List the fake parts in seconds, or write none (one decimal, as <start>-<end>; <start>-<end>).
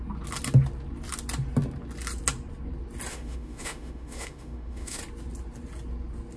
3.1-5.0